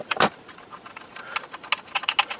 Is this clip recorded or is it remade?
recorded